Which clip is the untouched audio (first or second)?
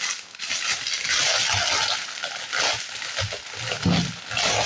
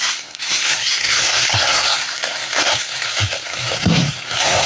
first